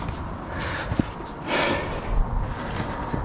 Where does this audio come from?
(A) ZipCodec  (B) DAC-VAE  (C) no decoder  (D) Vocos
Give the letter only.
C